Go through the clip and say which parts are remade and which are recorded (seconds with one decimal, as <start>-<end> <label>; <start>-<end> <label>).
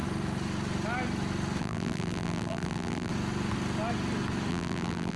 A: 0.0-1.6 recorded; 1.6-3.1 remade; 3.1-4.5 recorded; 4.5-5.2 remade